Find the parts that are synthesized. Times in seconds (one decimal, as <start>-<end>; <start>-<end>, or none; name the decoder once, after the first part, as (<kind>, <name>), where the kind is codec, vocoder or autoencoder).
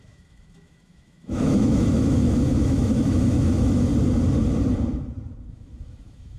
0.0-3.9 (autoencoder, DAC-VAE); 5.5-6.4